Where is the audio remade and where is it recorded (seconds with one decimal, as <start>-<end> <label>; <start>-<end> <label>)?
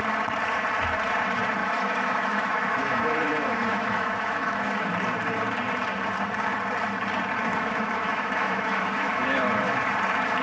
0.0-1.6 recorded; 1.6-4.9 remade; 4.9-7.5 recorded; 7.5-9.9 remade; 9.9-10.4 recorded